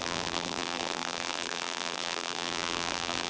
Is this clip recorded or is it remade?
remade